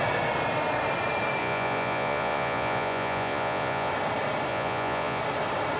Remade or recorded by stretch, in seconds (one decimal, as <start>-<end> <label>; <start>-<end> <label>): 0.0-1.4 recorded; 1.4-3.9 remade; 3.9-4.5 recorded; 4.5-5.2 remade; 5.2-5.8 recorded